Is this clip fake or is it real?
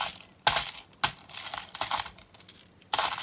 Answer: real